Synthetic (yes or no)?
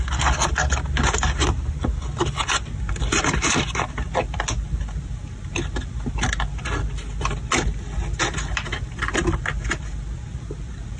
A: no